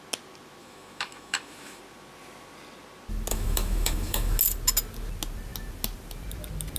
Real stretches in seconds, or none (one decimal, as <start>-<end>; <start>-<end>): 0.0-0.6; 1.8-3.3; 4.4-6.8